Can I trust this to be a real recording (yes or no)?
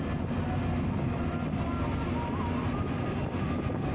yes